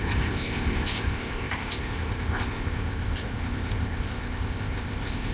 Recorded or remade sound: remade